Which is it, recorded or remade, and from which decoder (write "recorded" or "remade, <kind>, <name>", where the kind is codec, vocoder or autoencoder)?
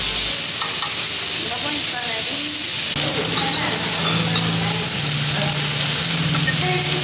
recorded